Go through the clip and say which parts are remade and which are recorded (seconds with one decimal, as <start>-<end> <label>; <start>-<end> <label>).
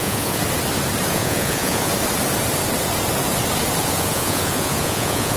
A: 0.0-0.4 remade; 0.4-1.1 recorded; 1.1-1.9 remade; 1.9-3.8 recorded; 3.8-5.4 remade